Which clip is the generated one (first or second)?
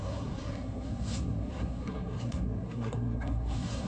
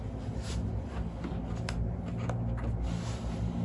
first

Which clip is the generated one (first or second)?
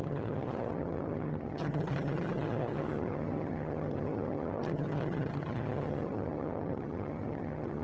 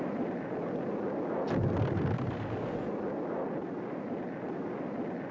first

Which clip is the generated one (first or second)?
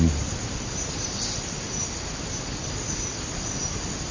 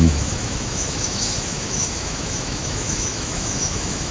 second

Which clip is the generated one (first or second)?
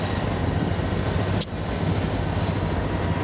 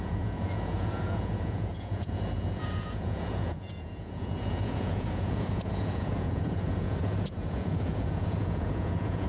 second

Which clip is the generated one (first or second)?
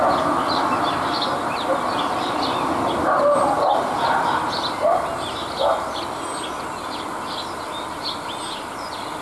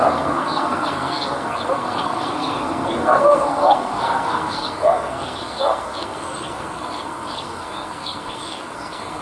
second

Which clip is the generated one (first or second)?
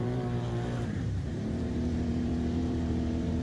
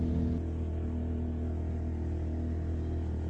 first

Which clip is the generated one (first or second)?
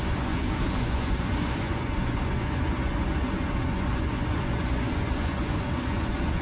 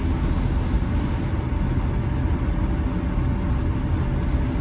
first